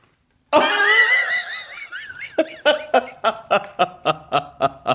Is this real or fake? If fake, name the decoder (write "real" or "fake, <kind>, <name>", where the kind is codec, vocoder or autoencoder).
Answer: real